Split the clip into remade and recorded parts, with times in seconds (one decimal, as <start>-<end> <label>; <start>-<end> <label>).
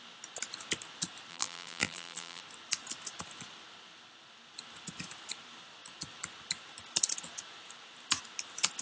0.0-1.3 recorded; 1.3-2.4 remade; 2.4-8.8 recorded